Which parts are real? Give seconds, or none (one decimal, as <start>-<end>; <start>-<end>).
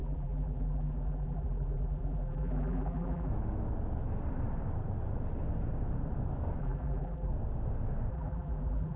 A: 3.3-6.6; 7.3-8.1